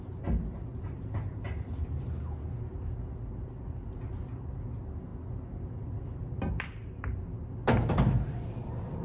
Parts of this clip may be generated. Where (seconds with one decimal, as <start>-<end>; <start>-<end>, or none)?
none